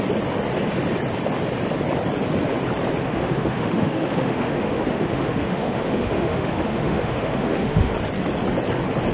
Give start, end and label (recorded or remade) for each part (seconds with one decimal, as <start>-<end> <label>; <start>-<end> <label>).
0.0-3.0 recorded; 3.0-7.9 remade; 7.9-9.1 recorded